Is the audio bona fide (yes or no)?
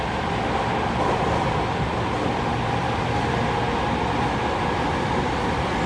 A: yes